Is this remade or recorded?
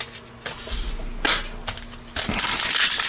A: recorded